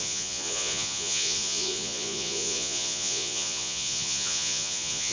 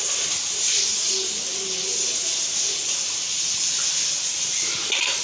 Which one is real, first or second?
second